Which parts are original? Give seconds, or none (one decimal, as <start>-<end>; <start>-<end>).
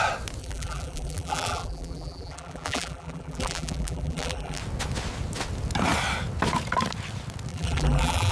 0.0-0.4; 4.6-7.5